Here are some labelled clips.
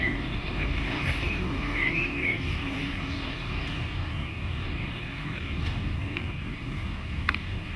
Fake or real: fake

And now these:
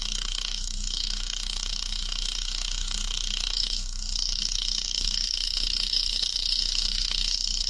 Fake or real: fake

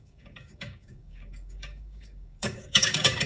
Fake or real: fake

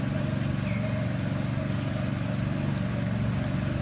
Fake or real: real